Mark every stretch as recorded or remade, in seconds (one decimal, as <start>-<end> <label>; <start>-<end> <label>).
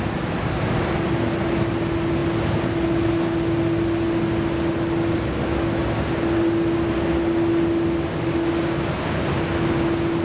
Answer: 0.0-10.2 recorded